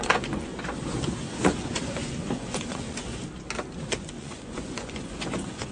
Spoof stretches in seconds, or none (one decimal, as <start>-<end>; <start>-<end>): 0.0-0.5; 1.2-3.2; 3.8-5.7